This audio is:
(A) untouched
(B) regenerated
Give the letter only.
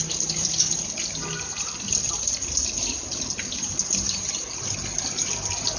A